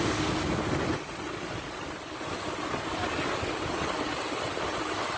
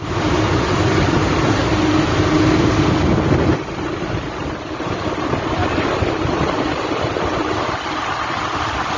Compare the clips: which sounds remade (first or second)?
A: second